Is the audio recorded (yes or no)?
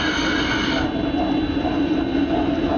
yes